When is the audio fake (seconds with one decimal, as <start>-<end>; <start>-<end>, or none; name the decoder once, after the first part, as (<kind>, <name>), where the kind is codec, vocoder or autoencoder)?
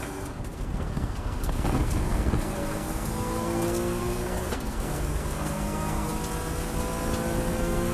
0.0-6.1 (codec, SNAC); 7.5-7.9